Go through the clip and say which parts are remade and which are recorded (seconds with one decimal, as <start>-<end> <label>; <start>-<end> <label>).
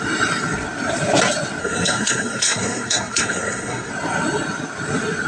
0.0-1.6 recorded; 1.6-3.9 remade; 3.9-5.3 recorded